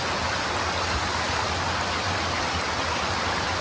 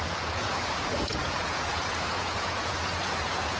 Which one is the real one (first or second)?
first